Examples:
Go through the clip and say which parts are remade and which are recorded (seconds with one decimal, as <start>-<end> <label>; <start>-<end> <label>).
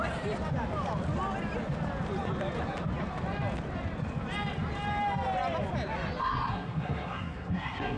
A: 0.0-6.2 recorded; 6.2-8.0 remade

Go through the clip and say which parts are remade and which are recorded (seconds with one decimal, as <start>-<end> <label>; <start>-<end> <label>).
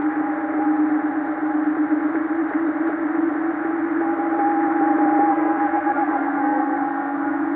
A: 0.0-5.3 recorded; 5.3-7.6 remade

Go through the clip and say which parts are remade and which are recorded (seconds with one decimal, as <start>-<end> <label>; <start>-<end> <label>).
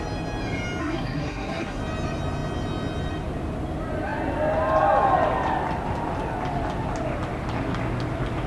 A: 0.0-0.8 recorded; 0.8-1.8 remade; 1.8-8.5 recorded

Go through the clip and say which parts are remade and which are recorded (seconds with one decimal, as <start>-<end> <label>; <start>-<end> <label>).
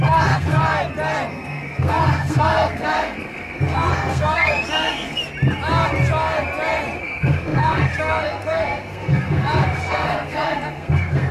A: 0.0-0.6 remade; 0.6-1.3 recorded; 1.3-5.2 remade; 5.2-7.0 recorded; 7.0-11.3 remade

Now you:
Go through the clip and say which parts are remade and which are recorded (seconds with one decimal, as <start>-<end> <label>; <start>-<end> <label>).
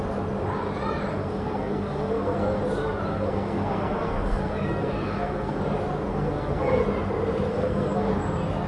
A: 0.0-1.1 recorded; 1.1-2.6 remade; 2.6-3.1 recorded; 3.1-5.6 remade; 5.6-6.1 recorded; 6.1-6.8 remade; 6.8-7.5 recorded; 7.5-8.1 remade; 8.1-8.7 recorded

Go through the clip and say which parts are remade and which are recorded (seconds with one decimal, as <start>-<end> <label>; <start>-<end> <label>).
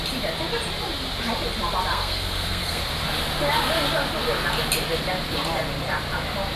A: 0.0-1.9 recorded; 1.9-2.8 remade; 2.8-6.6 recorded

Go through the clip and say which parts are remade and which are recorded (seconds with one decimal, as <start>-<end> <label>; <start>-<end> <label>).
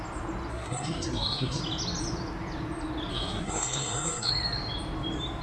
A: 0.0-0.5 recorded; 0.5-1.6 remade; 1.6-3.1 recorded; 3.1-4.3 remade; 4.3-5.4 recorded